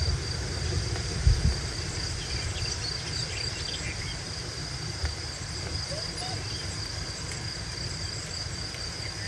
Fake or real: real